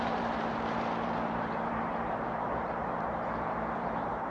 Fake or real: fake